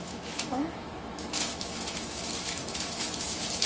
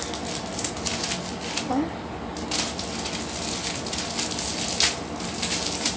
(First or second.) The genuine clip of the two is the second